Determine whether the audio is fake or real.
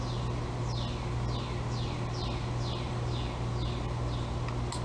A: real